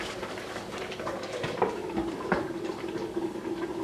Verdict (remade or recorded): remade